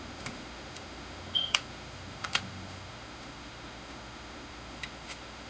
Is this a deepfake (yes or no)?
yes